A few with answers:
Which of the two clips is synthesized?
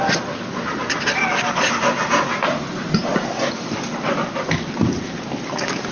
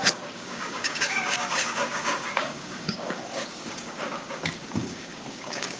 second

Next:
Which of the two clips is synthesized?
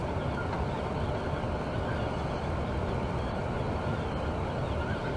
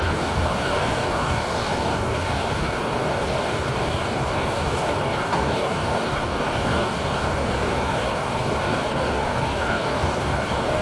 second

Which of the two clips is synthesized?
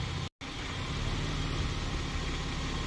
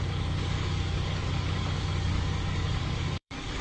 second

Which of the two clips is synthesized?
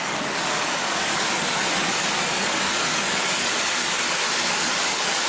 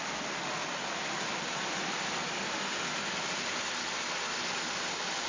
first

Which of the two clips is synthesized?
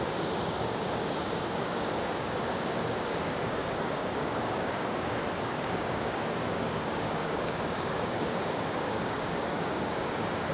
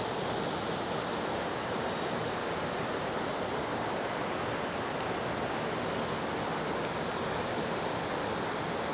first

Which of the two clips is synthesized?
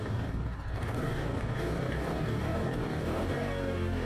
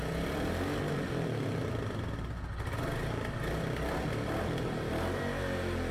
first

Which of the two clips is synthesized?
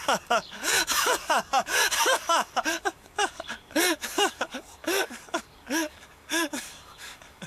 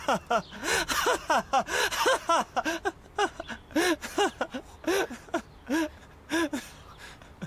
first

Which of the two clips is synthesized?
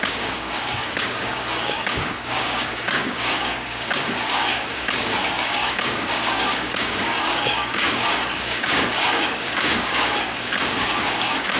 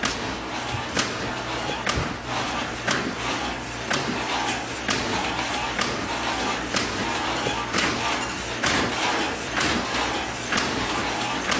first